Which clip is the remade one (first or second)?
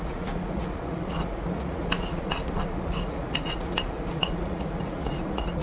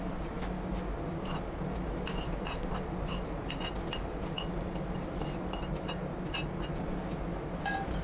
first